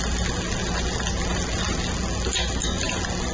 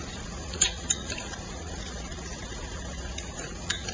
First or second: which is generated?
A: second